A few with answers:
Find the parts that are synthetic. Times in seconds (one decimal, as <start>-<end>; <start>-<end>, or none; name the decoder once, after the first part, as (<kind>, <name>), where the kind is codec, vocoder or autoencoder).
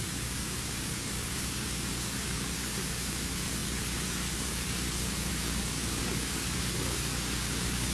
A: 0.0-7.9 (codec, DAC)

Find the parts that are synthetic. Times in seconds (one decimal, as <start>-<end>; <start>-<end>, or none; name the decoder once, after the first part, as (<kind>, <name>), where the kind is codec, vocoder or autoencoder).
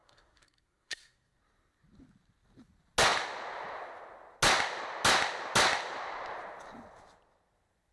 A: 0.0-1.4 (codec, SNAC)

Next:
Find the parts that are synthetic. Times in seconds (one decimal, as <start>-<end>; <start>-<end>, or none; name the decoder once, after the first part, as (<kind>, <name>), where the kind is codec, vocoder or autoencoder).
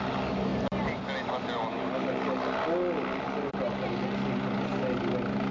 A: none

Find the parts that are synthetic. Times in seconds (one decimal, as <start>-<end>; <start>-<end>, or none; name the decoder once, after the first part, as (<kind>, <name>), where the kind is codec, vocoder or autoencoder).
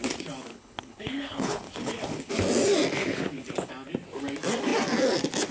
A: 0.5-2.3 (codec, HILCodec); 3.0-3.7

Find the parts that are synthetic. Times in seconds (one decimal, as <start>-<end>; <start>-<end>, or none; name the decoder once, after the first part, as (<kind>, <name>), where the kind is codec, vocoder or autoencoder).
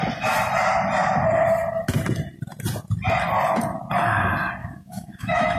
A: 4.6-5.6 (autoencoder, DAC-VAE)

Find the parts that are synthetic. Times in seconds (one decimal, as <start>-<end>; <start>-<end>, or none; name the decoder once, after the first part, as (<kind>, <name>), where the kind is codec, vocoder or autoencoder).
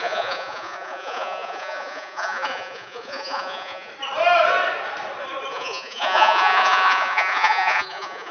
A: 0.0-3.9 (vocoder, Vocos); 5.5-8.3